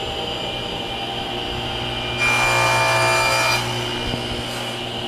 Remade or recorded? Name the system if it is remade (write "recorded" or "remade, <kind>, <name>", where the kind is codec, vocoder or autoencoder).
recorded